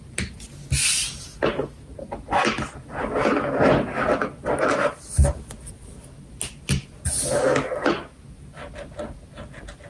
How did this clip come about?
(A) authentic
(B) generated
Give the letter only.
A